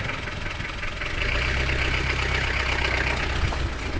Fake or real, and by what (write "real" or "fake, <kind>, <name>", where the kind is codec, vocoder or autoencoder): real